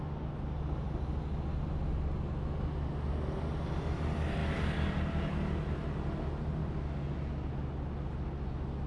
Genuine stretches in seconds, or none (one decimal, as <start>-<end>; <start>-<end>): 0.0-8.9